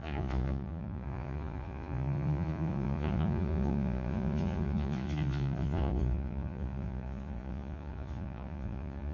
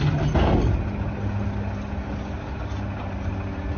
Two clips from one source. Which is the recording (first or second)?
second